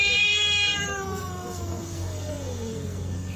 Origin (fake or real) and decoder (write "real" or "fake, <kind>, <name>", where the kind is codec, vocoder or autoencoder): fake, codec, SNAC